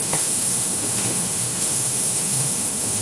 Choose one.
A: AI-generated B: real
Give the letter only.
A